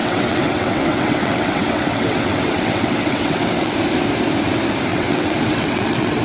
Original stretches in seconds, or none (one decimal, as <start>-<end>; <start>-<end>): 3.7-4.9